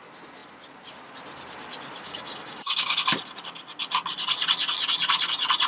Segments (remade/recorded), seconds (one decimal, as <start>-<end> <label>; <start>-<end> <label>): 0.0-2.0 recorded; 2.0-3.0 remade; 3.0-5.7 recorded